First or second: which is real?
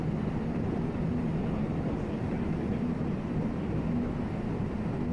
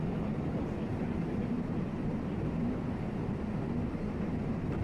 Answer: first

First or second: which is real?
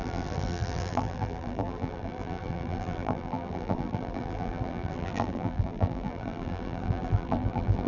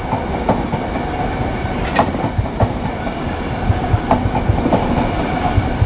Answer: second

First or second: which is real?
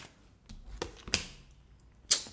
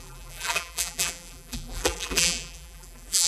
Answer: first